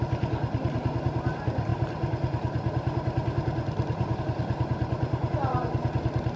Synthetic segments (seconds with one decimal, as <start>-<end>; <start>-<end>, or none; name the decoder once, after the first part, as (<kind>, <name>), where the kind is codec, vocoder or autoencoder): none